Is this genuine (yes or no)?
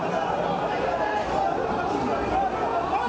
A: yes